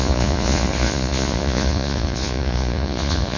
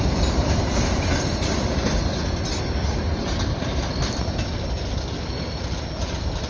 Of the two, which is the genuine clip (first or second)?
second